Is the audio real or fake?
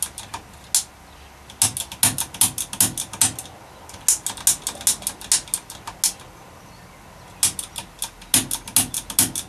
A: real